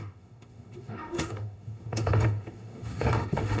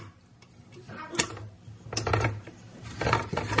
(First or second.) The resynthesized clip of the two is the first